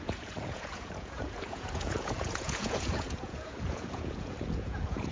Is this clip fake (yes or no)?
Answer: yes